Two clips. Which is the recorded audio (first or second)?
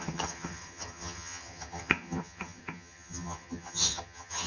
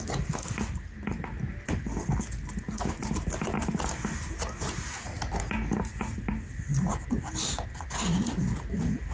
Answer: second